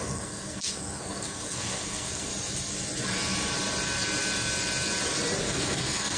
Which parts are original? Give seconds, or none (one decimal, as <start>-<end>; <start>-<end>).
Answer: 2.3-5.4